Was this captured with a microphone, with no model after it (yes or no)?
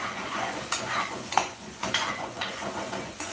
no